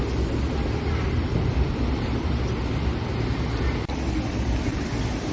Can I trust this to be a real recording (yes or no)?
yes